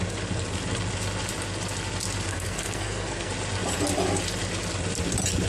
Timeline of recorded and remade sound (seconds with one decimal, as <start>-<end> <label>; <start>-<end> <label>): 0.0-2.3 recorded; 2.3-3.3 remade; 3.3-5.5 recorded